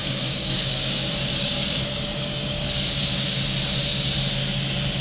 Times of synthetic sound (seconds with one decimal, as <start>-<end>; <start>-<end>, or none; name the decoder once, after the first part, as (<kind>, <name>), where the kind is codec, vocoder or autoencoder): 0.0-3.0 (codec, DAC)